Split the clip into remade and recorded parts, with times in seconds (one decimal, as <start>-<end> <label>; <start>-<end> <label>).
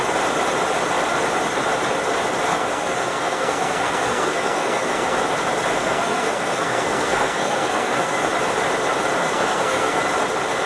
0.0-2.5 recorded; 2.5-5.2 remade; 5.2-5.7 recorded; 5.7-8.3 remade; 8.3-9.2 recorded; 9.2-10.0 remade; 10.0-10.7 recorded